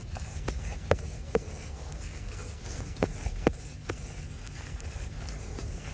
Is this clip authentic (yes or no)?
no